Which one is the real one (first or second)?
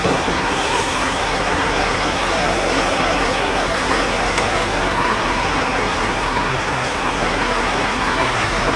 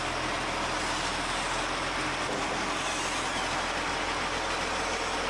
second